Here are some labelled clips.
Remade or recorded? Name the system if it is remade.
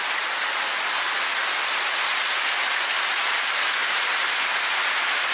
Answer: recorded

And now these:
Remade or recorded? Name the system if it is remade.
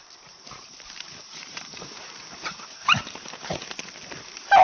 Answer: remade, vocoder, BigVGAN v2